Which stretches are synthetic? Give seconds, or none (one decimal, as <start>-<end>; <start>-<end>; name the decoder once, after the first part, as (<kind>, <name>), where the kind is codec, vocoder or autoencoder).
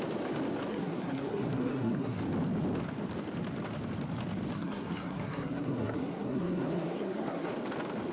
0.7-2.2 (codec, SNAC); 4.5-7.5